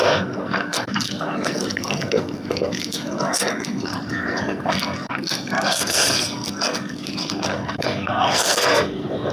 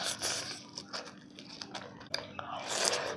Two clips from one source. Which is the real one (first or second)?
second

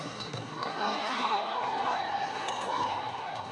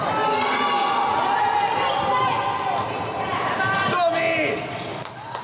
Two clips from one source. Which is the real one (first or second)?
second